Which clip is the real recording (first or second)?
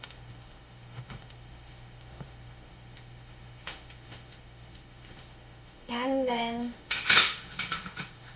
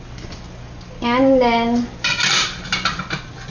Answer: second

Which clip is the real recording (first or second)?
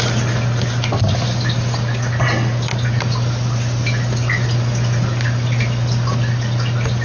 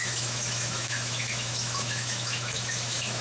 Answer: first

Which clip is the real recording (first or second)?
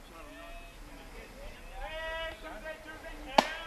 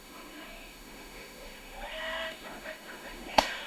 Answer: first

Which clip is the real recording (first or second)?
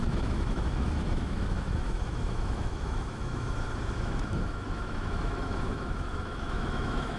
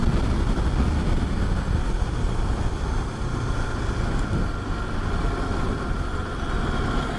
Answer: second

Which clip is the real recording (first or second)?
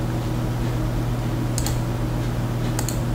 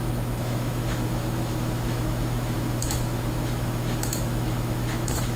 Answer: first